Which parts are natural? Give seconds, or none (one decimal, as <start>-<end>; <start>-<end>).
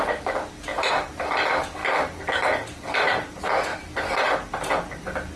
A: 0.0-0.7; 1.3-3.7; 4.3-5.4